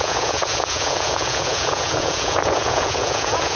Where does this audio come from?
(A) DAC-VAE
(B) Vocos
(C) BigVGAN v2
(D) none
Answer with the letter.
B